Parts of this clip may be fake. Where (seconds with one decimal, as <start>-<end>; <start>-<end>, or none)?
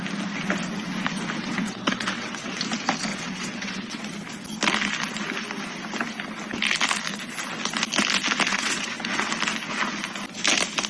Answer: 1.4-2.6; 3.1-4.0; 8.5-9.3